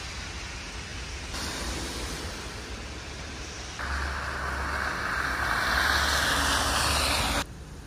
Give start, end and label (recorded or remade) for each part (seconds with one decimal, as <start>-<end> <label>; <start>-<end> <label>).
0.0-7.9 recorded

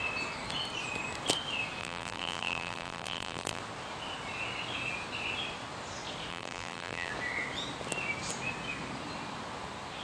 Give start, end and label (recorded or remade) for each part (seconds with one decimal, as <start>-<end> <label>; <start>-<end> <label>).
0.0-1.8 recorded; 1.8-3.6 remade; 3.6-6.3 recorded; 6.3-7.1 remade; 7.1-10.0 recorded

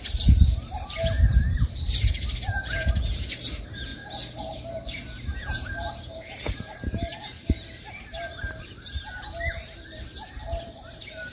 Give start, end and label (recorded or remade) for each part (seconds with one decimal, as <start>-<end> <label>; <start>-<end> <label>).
0.0-3.9 remade; 3.9-5.4 recorded; 5.4-11.3 remade